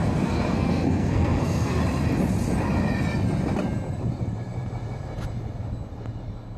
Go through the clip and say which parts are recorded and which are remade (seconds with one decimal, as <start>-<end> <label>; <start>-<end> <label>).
0.0-1.8 remade; 1.8-6.6 recorded